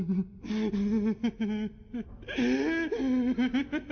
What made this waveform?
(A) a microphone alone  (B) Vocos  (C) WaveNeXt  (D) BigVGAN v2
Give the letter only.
A